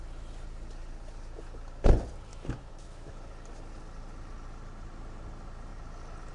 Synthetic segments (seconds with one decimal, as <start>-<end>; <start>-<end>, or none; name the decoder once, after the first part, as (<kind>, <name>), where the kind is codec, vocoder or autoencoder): 2.3-3.1 (autoencoder, DAC-VAE)